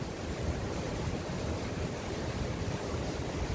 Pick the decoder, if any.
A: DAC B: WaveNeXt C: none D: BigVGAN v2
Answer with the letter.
C